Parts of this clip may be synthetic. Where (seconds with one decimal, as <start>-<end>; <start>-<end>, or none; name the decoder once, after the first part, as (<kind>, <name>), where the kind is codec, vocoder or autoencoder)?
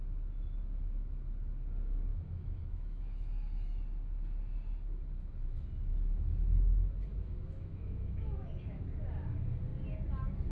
2.1-3.3 (autoencoder, DAC-VAE); 7.1-8.5